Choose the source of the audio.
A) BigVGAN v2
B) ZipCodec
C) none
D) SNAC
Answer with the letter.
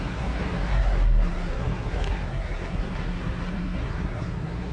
D